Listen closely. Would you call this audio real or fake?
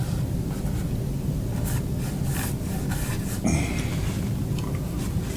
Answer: real